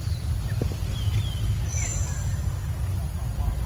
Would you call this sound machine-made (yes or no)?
no